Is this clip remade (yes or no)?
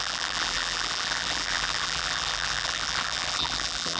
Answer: yes